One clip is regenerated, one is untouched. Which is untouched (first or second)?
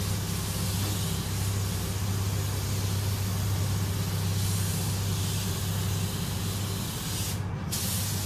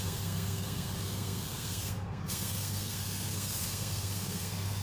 first